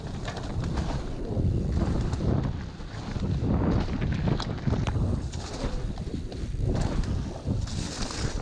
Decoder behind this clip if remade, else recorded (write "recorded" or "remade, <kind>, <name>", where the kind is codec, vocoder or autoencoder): recorded